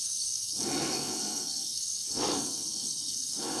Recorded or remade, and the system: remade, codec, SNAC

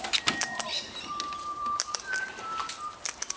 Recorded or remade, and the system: recorded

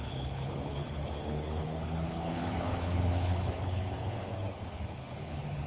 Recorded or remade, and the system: remade, codec, HILCodec